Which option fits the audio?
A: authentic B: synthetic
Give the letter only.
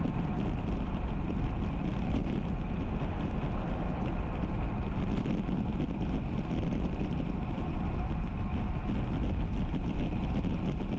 A